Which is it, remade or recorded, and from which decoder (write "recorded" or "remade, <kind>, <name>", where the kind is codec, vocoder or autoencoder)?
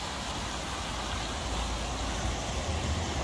recorded